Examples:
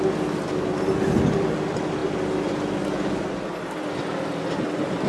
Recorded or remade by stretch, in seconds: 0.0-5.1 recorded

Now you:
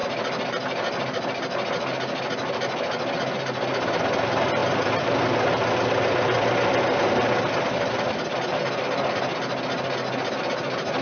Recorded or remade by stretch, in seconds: 0.0-11.0 recorded

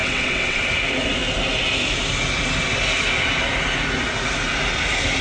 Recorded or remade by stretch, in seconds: 0.0-0.6 remade; 0.6-5.2 recorded

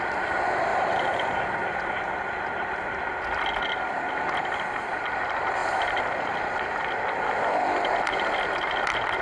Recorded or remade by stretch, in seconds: 0.0-0.7 recorded; 0.7-1.4 remade; 1.4-9.2 recorded

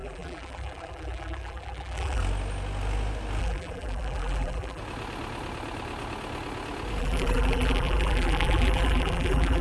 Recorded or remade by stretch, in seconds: 0.0-2.2 remade; 2.2-3.4 recorded; 3.4-4.8 remade; 4.8-7.0 recorded; 7.0-9.6 remade

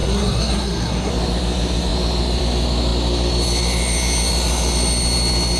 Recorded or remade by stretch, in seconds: 0.0-1.1 remade; 1.1-5.6 recorded

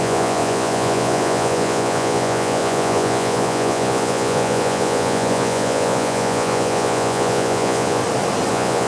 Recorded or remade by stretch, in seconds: 0.0-8.0 remade; 8.0-8.5 recorded; 8.5-8.9 remade